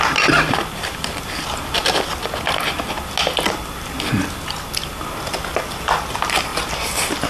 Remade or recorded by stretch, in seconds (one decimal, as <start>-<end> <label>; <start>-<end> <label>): 0.0-7.3 recorded

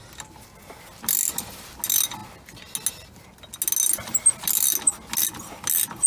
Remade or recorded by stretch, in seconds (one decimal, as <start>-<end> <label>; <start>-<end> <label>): 0.0-6.1 recorded

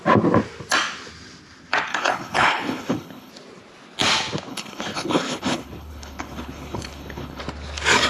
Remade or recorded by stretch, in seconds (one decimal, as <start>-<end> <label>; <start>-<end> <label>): 0.0-1.9 recorded; 1.9-3.3 remade; 3.3-4.5 recorded; 4.5-7.4 remade; 7.4-8.1 recorded